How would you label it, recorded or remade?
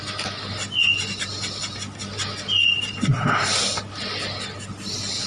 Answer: recorded